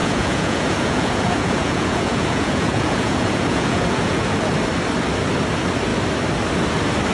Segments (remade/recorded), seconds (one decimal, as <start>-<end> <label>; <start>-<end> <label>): 0.0-4.3 remade; 4.3-7.1 recorded